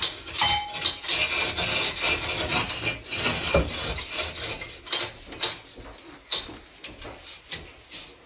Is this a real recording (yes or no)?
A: yes